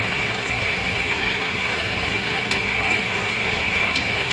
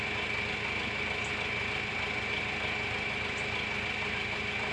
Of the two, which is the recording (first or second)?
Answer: second